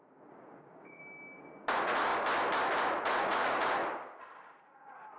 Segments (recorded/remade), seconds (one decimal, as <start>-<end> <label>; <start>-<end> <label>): 0.0-1.0 remade; 1.0-1.7 recorded; 1.7-2.1 remade; 2.1-2.8 recorded; 2.8-3.8 remade; 3.8-4.6 recorded; 4.6-5.2 remade